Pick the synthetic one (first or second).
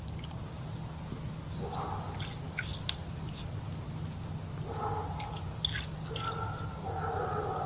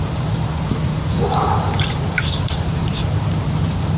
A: second